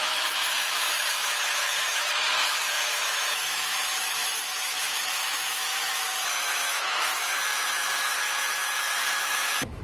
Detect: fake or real fake